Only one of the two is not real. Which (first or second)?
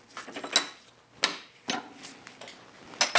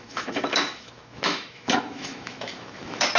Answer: second